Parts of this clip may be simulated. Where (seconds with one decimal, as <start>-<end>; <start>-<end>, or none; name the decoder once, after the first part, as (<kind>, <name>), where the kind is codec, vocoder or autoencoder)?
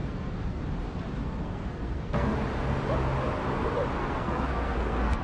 0.0-0.6 (codec, SNAC); 1.2-2.3; 4.0-5.2